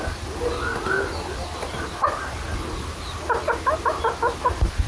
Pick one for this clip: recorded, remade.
recorded